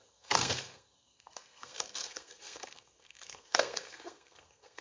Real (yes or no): no